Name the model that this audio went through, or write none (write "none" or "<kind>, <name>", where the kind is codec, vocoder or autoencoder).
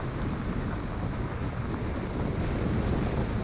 none